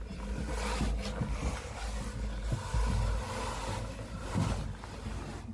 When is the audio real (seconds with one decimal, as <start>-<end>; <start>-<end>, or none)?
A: 0.0-5.5

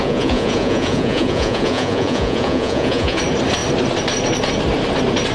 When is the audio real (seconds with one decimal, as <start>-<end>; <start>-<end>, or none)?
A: 3.2-5.3

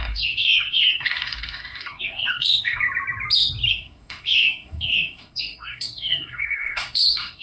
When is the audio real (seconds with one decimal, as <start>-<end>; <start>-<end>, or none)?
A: 2.8-3.7

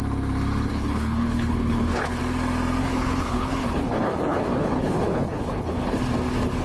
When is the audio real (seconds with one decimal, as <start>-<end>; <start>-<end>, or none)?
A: 0.0-0.7; 2.2-2.8; 6.0-6.6

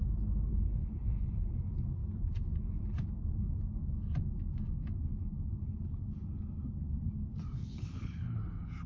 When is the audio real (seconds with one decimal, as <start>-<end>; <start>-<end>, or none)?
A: 0.0-0.5; 1.5-7.6; 8.4-8.9